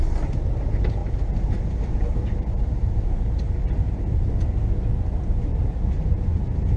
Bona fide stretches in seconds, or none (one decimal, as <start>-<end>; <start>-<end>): 0.0-1.0; 4.3-5.5